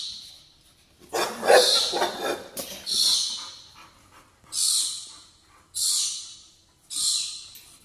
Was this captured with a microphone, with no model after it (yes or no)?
yes